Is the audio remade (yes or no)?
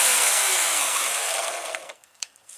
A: yes